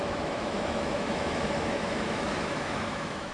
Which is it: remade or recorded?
remade